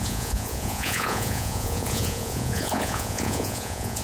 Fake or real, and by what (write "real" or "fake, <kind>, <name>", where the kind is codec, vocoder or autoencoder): fake, vocoder, Vocos